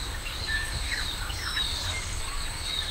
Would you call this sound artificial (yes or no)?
yes